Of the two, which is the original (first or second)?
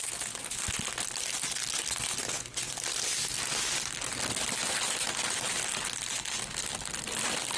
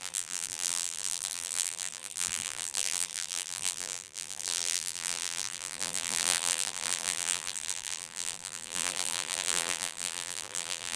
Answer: first